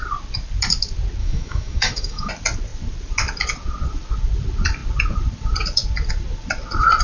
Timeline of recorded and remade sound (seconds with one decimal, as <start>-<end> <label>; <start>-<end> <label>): 0.0-1.2 recorded; 1.2-2.3 remade; 2.3-7.0 recorded